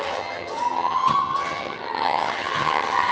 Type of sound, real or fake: fake